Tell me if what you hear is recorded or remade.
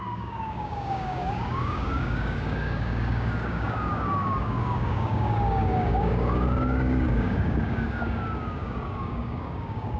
remade